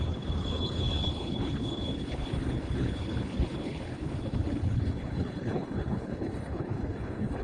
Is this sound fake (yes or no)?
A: yes